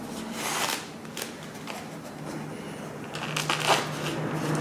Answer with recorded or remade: recorded